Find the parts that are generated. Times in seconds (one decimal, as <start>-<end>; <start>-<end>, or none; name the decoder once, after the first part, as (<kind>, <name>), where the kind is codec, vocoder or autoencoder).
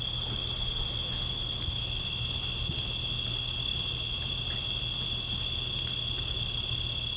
0.4-1.8 (vocoder, BigVGAN v2); 3.7-4.8